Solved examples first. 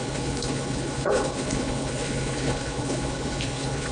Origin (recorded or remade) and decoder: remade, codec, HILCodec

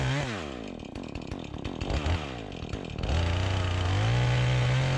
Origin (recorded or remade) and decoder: recorded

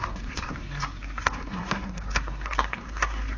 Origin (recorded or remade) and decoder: remade, codec, SNAC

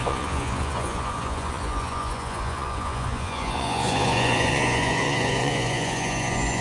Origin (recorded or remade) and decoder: remade, vocoder, Vocos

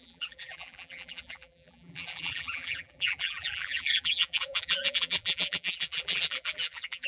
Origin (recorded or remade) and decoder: remade, vocoder, BigVGAN v2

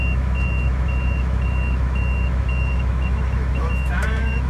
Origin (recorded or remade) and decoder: remade, autoencoder, DAC-VAE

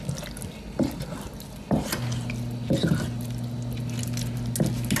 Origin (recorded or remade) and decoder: recorded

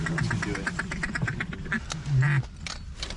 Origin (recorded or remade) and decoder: recorded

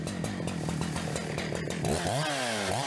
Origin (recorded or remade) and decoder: recorded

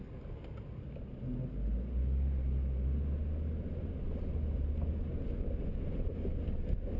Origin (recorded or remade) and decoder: recorded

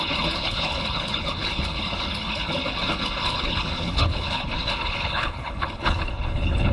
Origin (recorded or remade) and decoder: remade, codec, HILCodec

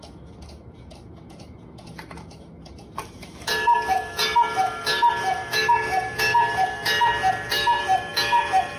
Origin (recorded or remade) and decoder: remade, autoencoder, DAC-VAE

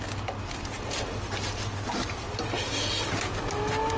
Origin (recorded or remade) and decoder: recorded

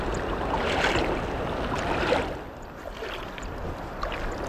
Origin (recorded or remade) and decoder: recorded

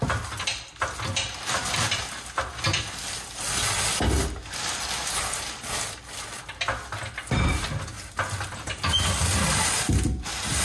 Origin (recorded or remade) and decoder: recorded